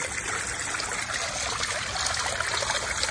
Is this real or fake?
real